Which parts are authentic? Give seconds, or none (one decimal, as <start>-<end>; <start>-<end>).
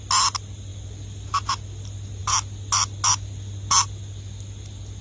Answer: 0.0-5.0